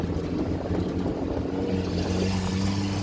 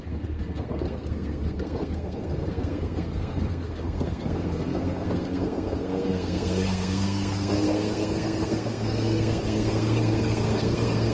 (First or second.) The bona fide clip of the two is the first